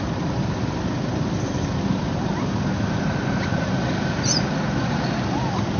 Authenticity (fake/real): real